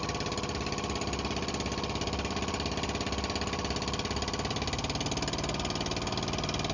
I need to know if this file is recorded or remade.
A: recorded